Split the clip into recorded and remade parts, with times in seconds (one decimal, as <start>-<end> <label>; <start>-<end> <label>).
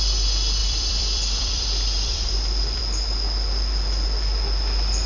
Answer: 0.0-0.6 recorded; 0.6-2.8 remade; 2.8-5.1 recorded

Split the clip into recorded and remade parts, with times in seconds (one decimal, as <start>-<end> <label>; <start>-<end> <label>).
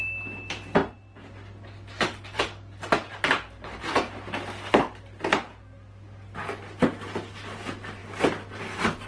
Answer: 0.0-0.8 remade; 0.8-1.3 recorded; 1.3-9.1 remade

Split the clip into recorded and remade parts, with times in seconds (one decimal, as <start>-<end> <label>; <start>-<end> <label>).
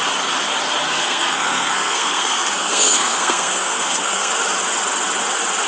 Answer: 0.0-0.9 recorded; 0.9-4.3 remade; 4.3-5.7 recorded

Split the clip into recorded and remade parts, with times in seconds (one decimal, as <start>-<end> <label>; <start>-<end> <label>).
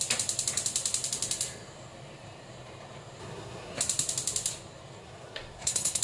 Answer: 0.0-3.2 recorded; 3.2-3.8 remade; 3.8-5.0 recorded; 5.0-6.0 remade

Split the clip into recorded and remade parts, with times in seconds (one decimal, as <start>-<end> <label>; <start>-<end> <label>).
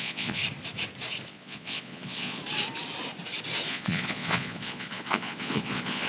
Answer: 0.0-0.4 remade; 0.4-1.3 recorded; 1.3-2.4 remade; 2.4-3.7 recorded; 3.7-6.1 remade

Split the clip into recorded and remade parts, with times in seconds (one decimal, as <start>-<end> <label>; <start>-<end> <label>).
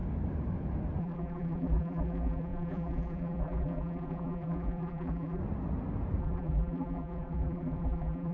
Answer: 0.0-1.0 recorded; 1.0-5.4 remade; 5.4-6.2 recorded; 6.2-8.3 remade